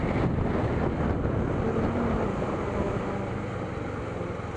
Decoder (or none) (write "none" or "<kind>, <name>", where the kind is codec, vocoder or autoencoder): none